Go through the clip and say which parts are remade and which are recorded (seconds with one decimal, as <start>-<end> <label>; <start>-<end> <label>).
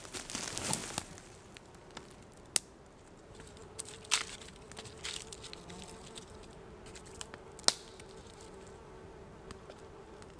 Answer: 0.0-10.4 recorded